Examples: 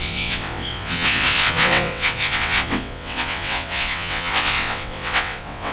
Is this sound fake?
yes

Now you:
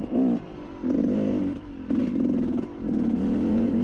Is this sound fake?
no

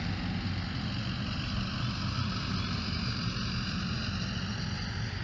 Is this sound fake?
no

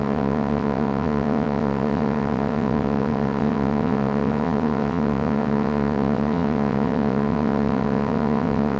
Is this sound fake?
yes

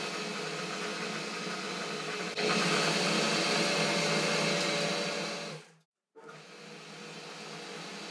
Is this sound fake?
no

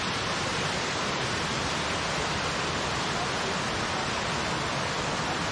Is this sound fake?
no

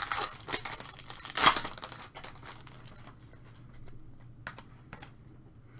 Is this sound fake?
no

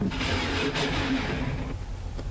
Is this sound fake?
no